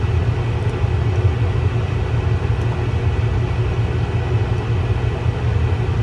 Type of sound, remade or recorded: recorded